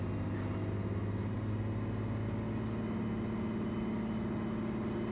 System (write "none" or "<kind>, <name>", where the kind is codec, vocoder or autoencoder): none